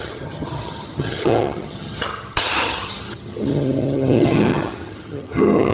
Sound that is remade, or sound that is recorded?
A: remade